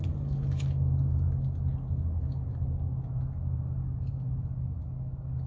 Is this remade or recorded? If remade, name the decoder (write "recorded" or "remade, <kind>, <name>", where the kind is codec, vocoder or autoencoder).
recorded